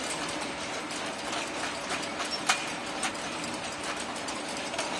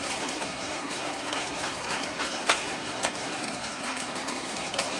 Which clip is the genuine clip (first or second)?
first